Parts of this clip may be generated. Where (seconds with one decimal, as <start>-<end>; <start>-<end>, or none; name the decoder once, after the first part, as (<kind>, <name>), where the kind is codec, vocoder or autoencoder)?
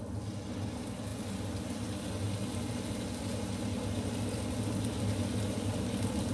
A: none